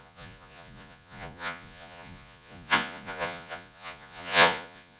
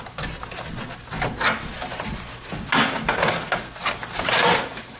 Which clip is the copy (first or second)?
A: first